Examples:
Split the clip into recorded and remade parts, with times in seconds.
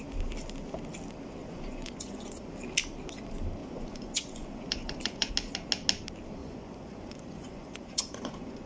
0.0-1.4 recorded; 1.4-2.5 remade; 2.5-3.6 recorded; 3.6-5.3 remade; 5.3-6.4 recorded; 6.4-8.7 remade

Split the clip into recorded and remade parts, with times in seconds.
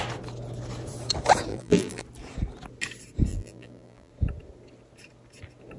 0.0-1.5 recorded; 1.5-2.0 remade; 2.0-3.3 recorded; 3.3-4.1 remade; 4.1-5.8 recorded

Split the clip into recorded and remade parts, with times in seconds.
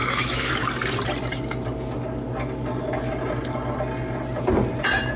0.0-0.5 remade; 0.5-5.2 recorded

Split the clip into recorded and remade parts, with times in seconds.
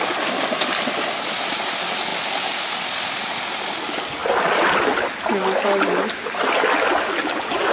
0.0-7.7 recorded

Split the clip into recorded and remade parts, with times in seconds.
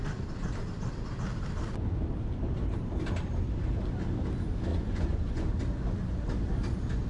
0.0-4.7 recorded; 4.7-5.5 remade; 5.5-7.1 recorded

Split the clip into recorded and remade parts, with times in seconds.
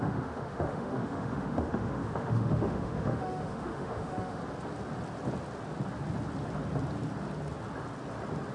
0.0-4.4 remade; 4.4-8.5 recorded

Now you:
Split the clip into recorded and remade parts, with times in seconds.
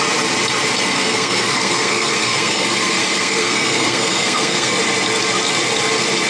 0.0-0.9 recorded; 0.9-4.7 remade; 4.7-6.3 recorded